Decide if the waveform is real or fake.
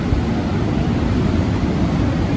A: real